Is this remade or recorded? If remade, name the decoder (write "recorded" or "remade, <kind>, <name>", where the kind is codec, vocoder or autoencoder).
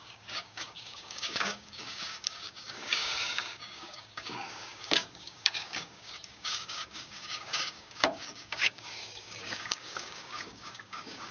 remade, codec, DAC